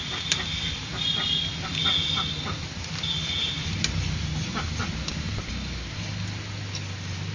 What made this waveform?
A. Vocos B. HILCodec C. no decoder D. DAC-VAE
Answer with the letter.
C